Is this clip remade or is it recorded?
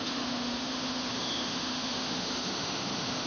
remade